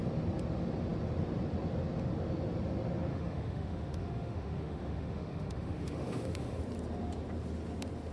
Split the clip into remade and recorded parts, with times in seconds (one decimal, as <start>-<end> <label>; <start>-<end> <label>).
0.0-3.1 recorded; 3.1-6.6 remade; 6.6-8.1 recorded